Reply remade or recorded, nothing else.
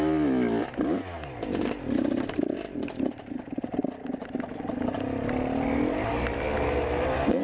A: recorded